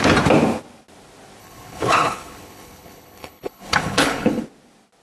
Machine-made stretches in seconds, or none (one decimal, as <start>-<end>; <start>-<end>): 1.4-4.4